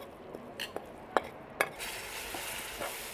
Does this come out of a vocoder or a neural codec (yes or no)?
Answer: no